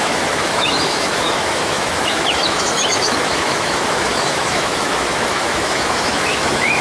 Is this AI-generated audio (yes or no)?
yes